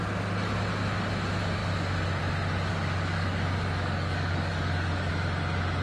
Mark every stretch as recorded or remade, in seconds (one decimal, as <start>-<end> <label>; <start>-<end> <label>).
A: 0.0-2.7 recorded; 2.7-5.1 remade; 5.1-5.8 recorded